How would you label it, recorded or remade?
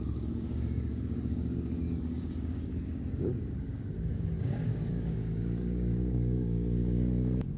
remade